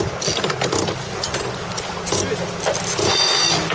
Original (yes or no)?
yes